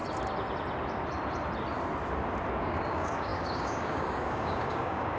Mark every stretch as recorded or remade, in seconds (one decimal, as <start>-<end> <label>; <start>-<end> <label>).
0.0-2.6 recorded; 2.6-5.2 remade